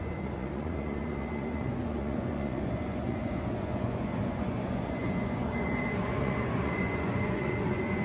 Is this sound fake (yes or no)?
yes